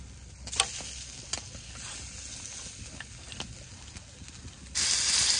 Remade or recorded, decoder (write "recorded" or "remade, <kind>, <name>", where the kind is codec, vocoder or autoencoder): recorded